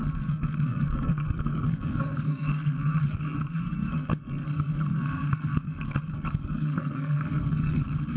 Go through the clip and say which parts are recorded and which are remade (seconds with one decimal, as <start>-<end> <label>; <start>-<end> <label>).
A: 0.0-8.2 remade